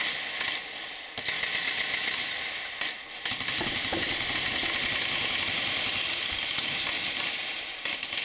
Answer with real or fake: real